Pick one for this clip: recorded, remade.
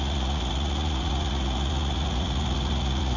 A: remade